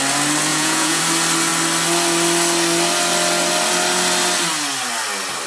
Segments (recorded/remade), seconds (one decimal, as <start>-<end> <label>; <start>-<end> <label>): 0.0-0.5 recorded; 0.5-1.0 remade; 1.0-5.5 recorded